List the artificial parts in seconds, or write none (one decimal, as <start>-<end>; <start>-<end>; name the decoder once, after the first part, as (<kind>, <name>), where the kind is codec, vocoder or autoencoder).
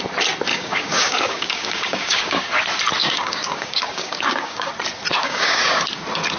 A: 0.5-2.5 (codec, DAC); 3.0-4.7; 5.2-5.8